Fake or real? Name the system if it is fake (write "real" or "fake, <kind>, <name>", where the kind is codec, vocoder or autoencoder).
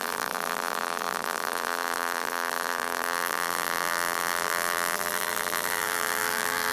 fake, vocoder, BigVGAN v2